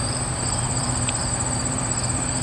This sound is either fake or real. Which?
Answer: fake